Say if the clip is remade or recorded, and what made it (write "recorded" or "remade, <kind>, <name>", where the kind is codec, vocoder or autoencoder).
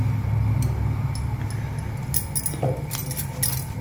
recorded